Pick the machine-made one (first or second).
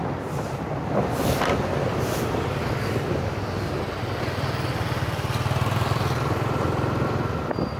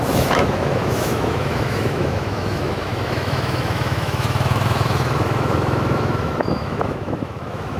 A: second